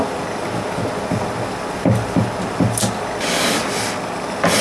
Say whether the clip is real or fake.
real